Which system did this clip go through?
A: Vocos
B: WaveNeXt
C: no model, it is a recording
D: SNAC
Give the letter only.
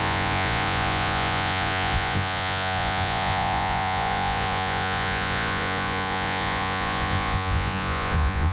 A